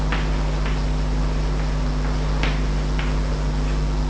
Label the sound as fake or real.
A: real